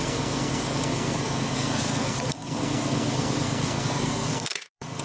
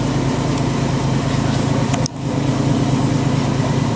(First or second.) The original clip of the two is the second